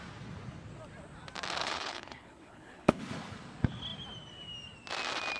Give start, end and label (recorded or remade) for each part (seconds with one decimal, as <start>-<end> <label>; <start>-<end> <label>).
0.0-1.6 recorded; 1.6-3.0 remade; 3.0-5.4 recorded